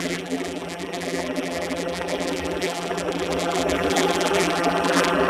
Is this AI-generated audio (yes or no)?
yes